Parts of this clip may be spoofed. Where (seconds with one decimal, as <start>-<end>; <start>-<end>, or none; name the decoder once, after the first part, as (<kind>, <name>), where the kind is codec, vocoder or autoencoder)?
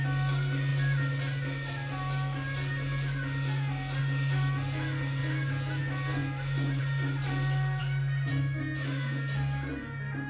none